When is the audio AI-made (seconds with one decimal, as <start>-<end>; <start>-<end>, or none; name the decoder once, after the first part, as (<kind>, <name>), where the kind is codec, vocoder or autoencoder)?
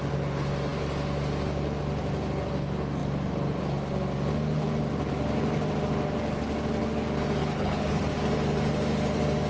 7.4-8.0 (codec, HILCodec)